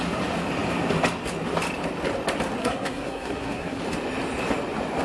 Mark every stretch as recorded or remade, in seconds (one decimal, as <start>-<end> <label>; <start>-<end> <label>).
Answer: 0.0-2.6 recorded; 2.6-3.8 remade; 3.8-5.0 recorded